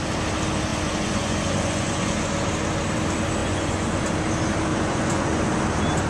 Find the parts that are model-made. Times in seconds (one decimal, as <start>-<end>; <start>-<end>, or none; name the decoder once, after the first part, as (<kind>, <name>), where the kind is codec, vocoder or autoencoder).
0.7-2.3 (vocoder, Vocos); 3.4-4.0; 4.7-5.4